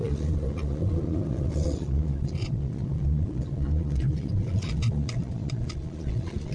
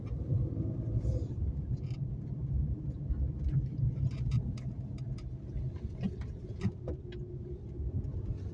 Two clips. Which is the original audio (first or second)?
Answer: second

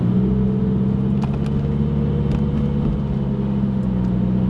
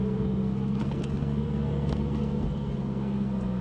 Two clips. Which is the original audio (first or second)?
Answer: first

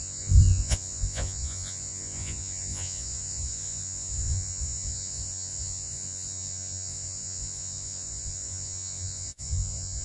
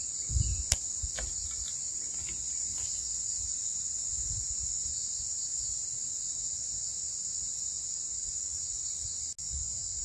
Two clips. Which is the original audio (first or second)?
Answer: second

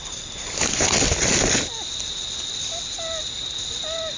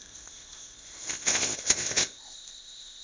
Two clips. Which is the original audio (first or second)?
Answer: first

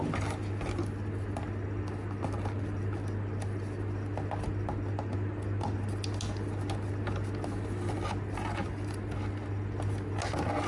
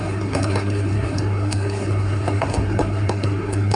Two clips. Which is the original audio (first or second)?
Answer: first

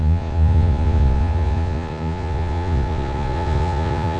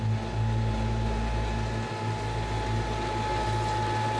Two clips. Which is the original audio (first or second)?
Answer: second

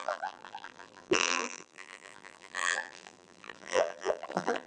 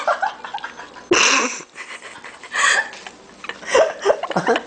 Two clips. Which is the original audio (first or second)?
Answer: second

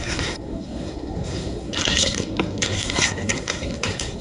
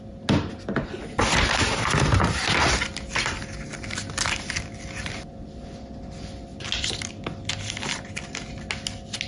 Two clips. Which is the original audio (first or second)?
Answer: second